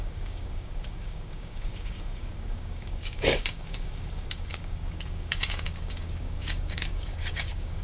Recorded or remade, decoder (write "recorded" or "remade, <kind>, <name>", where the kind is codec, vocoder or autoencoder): remade, codec, DAC